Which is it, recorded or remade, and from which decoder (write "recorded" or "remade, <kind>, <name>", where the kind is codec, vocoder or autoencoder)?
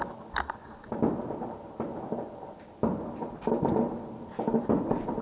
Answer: recorded